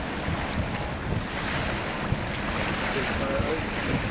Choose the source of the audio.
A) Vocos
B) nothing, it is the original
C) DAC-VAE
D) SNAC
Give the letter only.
B